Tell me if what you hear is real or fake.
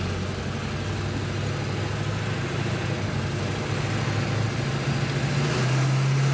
real